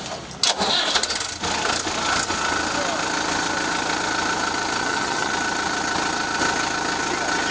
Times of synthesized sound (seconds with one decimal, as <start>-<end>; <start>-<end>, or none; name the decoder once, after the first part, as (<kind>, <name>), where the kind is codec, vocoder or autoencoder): 4.8-5.3 (vocoder, HiFi-GAN)